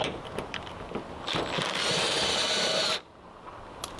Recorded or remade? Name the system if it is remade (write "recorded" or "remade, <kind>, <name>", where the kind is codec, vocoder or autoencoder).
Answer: recorded